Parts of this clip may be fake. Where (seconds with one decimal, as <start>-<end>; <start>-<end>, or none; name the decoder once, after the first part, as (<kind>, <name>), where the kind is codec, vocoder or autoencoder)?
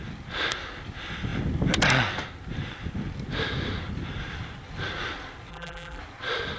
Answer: 5.5-6.0 (vocoder, BigVGAN v2)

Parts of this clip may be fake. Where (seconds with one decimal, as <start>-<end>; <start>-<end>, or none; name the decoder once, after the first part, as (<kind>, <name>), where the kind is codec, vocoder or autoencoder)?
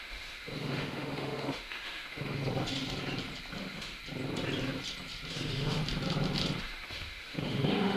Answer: 0.0-2.4 (autoencoder, DAC-VAE); 3.6-4.0; 5.3-5.8; 6.6-8.0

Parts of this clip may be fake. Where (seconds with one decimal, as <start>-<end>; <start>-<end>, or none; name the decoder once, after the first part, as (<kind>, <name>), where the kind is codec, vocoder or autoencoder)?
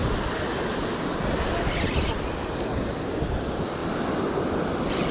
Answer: none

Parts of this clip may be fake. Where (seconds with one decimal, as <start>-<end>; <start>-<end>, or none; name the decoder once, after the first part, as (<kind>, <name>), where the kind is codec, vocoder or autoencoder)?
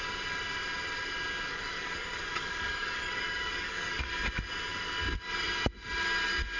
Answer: 1.5-4.1 (codec, DAC)